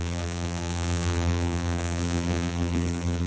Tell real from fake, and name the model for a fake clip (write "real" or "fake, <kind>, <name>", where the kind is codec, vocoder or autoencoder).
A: fake, vocoder, BigVGAN v2